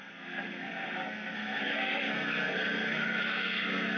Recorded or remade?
remade